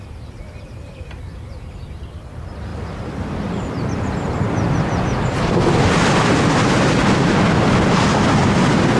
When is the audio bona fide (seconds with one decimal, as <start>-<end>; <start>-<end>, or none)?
7.0-9.0